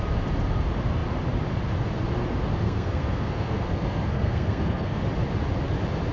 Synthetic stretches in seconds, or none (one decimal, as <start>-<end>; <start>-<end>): 2.5-5.0